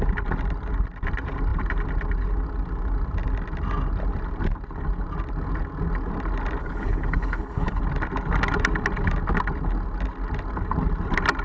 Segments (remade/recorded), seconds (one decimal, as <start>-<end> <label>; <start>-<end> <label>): 0.0-6.6 recorded; 6.6-7.8 remade; 7.8-11.4 recorded